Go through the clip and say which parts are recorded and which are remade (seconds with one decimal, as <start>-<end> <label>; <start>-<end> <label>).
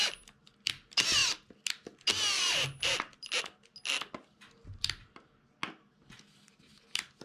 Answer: 0.0-7.2 recorded